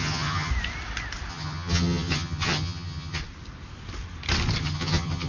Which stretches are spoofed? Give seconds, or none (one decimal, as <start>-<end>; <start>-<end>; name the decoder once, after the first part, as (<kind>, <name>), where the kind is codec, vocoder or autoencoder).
0.0-0.5 (vocoder, HiFi-GAN); 1.3-3.2; 4.6-5.3